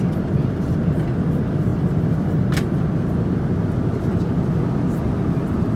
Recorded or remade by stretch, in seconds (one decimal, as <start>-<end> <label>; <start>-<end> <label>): 0.0-5.8 recorded